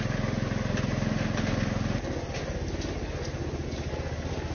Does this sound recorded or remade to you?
recorded